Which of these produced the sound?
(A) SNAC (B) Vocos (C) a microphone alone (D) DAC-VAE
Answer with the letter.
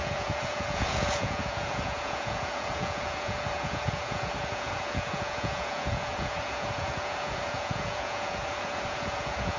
B